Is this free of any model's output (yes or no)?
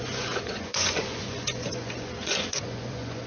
no